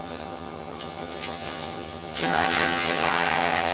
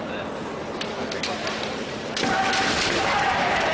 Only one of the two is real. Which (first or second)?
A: second